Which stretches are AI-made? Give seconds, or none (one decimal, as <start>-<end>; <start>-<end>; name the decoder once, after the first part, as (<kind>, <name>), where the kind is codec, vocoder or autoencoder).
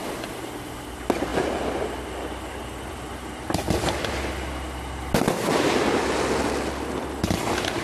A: none